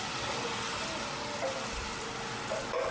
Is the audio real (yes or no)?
yes